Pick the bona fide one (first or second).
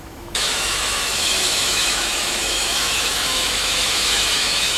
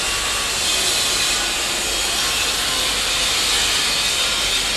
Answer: second